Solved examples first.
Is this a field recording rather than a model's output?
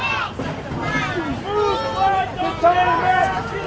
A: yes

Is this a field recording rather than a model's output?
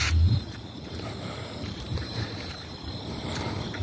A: no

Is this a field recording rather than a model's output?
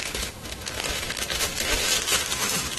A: no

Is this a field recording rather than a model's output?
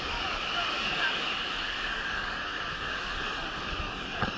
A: no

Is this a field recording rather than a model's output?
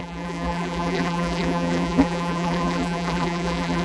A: no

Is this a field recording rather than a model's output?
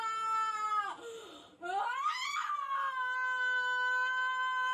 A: yes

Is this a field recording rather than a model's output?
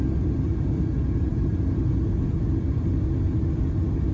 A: yes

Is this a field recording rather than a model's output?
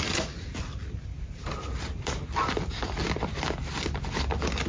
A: yes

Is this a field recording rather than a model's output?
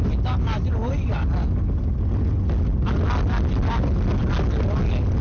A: yes